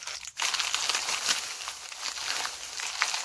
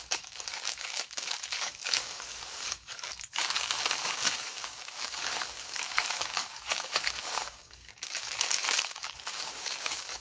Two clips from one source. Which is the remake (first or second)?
second